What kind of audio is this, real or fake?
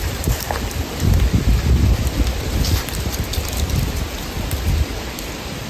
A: fake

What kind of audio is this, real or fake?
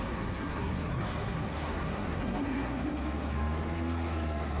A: fake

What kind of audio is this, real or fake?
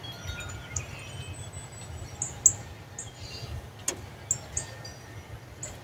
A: real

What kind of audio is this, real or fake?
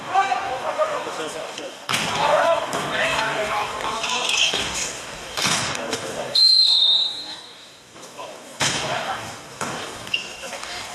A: fake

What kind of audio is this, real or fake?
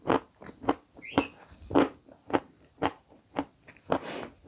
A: real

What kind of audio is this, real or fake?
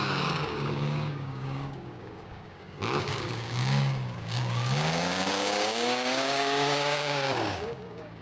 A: fake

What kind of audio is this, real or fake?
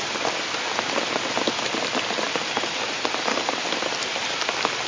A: real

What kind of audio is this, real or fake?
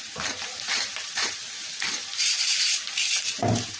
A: fake